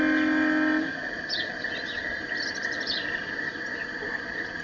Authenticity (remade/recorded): recorded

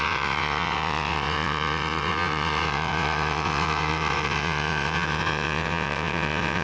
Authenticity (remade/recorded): remade